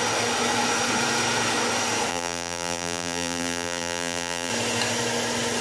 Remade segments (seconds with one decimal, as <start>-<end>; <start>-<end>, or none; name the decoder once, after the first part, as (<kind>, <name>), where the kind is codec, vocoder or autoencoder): 2.1-4.5 (vocoder, BigVGAN v2)